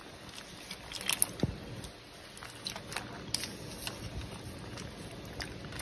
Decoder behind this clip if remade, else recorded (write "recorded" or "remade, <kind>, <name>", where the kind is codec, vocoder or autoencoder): recorded